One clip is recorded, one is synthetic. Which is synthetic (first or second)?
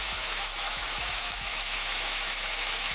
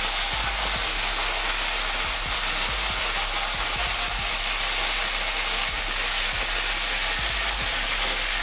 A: first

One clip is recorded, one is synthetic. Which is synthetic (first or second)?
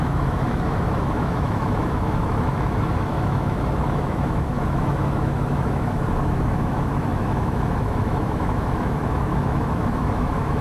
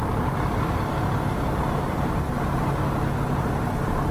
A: first